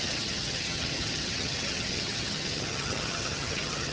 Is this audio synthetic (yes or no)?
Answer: yes